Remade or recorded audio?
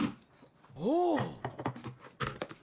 recorded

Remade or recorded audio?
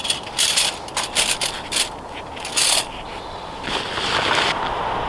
recorded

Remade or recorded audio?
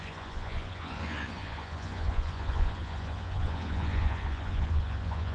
remade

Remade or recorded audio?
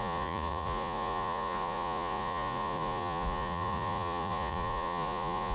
remade